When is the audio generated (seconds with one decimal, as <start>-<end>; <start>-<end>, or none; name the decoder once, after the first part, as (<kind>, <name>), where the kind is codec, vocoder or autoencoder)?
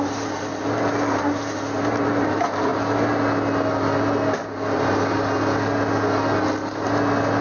none